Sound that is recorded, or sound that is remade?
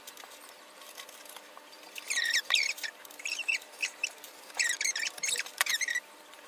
remade